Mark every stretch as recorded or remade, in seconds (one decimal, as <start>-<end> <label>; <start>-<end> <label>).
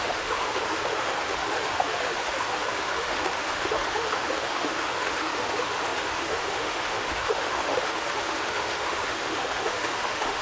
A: 0.0-10.4 remade